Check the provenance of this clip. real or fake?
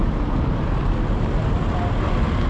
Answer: real